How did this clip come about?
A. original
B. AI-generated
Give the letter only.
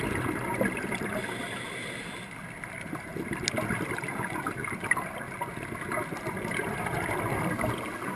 A